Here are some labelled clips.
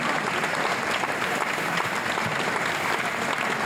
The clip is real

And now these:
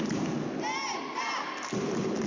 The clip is real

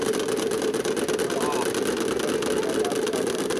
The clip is real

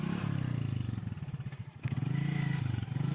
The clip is real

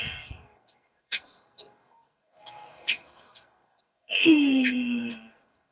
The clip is fake